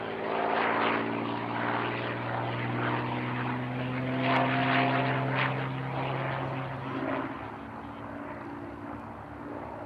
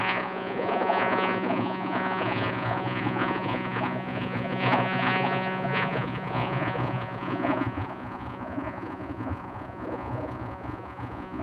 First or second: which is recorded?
first